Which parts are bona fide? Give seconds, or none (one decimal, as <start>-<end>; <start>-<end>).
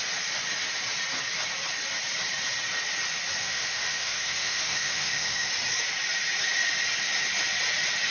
0.0-3.4; 5.5-8.1